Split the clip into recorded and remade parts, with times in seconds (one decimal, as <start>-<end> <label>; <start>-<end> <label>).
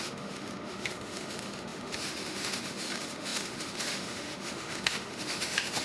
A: 0.0-5.8 remade